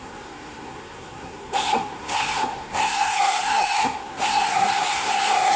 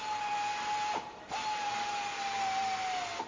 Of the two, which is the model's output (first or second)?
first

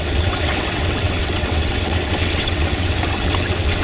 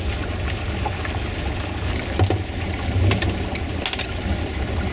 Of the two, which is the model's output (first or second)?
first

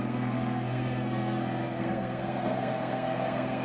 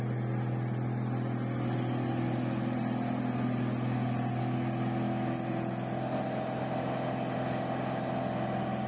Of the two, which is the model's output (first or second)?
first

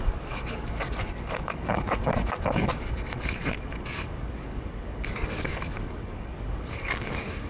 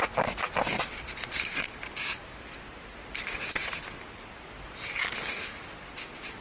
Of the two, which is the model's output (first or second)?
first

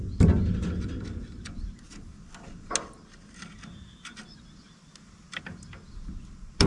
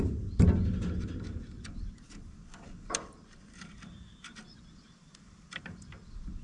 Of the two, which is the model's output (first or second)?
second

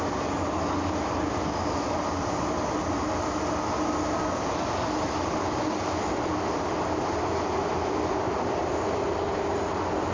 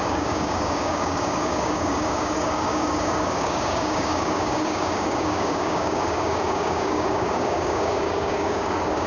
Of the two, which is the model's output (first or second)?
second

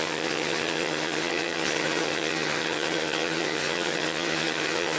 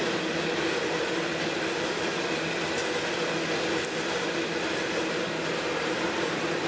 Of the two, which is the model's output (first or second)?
first